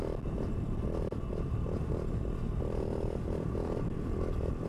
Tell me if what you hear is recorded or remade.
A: recorded